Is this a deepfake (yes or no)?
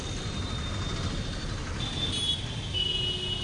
no